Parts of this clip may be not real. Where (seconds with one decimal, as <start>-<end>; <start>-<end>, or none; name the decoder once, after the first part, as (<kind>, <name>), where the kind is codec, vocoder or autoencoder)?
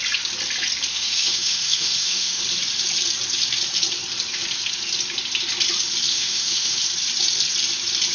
0.9-2.4 (autoencoder, DAC-VAE); 6.1-6.8